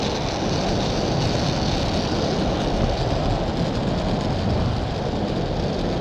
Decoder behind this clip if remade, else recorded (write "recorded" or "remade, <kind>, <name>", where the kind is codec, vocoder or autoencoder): recorded